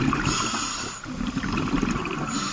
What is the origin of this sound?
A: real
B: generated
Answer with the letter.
A